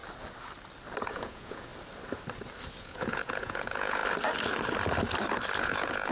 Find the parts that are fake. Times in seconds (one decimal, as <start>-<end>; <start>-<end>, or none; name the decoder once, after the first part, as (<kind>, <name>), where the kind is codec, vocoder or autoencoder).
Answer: 1.0-1.7 (vocoder, Vocos); 2.8-4.0; 5.6-6.1